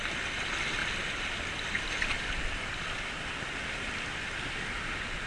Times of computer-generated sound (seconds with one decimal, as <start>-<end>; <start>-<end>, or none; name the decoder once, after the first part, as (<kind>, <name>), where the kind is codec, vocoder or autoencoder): none

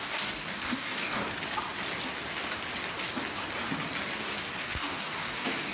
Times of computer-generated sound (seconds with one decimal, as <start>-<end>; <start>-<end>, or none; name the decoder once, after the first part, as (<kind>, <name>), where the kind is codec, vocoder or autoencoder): 0.0-1.2 (codec, DAC); 4.6-5.7

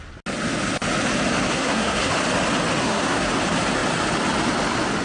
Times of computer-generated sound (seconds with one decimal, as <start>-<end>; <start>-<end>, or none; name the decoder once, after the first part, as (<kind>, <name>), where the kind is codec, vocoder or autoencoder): 1.5-2.1 (codec, SNAC); 2.8-3.3

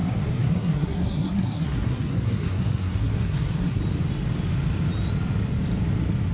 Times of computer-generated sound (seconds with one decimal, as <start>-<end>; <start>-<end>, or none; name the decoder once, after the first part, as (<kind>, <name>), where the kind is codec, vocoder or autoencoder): 0.0-3.8 (codec, SNAC)